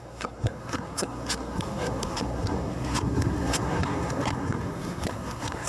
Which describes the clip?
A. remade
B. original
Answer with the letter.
A